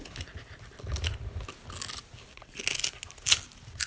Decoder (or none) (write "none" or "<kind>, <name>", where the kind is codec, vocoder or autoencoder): none